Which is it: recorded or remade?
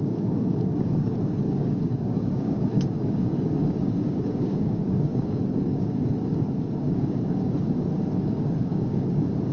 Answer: remade